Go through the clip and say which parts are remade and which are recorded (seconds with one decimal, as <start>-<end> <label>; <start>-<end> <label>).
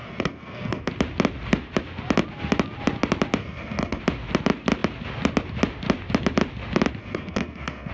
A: 0.0-0.9 remade; 0.9-3.4 recorded; 3.4-4.0 remade; 4.0-7.0 recorded; 7.0-7.9 remade